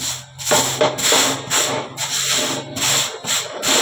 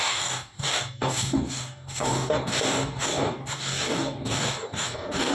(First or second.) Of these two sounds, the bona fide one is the first